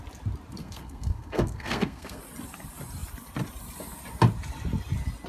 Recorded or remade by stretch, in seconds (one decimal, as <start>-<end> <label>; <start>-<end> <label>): 0.0-0.6 recorded; 0.6-2.2 remade; 2.2-5.3 recorded